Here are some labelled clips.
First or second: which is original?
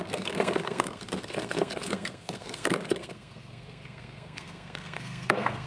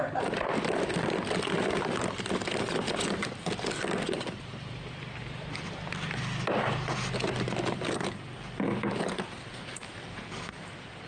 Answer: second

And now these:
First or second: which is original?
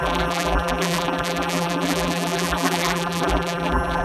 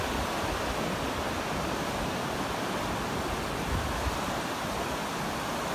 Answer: second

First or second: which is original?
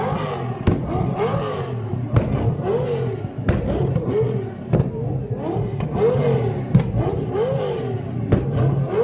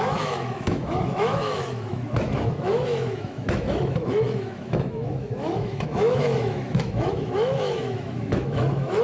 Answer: first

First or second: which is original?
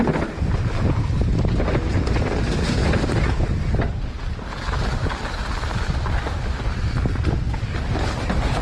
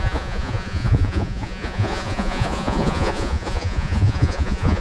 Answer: first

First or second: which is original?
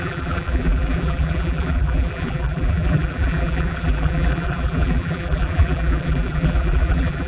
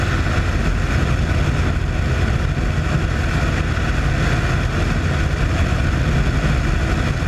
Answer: second